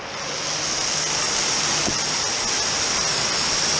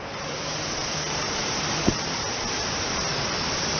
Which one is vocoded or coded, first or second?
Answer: second